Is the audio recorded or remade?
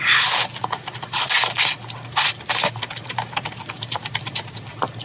recorded